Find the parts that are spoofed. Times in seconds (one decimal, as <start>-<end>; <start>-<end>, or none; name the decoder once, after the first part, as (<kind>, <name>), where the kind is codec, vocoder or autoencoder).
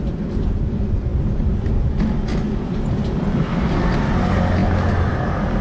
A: 1.1-1.9 (vocoder, BigVGAN v2); 2.3-3.4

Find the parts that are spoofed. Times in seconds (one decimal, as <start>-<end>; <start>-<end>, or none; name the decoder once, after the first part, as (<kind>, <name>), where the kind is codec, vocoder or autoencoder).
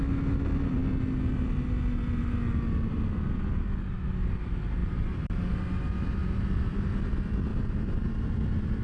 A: 4.8-5.4 (vocoder, BigVGAN v2); 7.5-8.8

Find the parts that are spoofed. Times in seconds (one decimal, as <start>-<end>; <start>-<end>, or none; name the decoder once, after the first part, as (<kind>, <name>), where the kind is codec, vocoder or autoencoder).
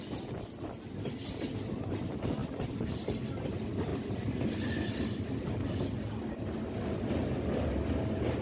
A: 2.4-2.9 (vocoder, BigVGAN v2); 3.9-6.0